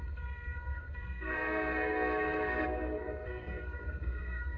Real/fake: fake